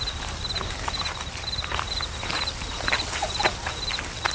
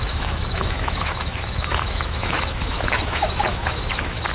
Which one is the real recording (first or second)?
first